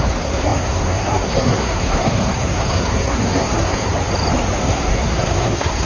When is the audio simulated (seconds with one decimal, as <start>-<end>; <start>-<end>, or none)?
0.0-3.9; 4.6-5.9